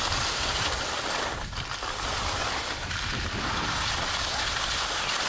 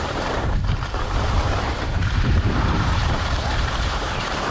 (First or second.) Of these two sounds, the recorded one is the first